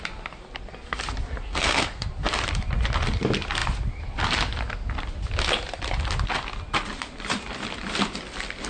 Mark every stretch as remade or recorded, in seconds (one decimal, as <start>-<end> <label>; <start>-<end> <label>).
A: 0.0-1.5 recorded; 1.5-2.1 remade; 2.1-8.7 recorded